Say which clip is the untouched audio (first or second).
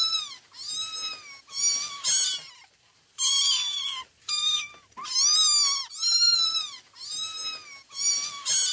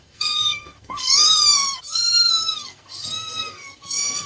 first